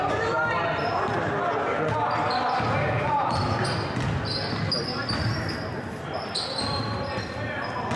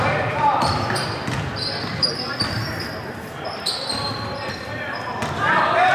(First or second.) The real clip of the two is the first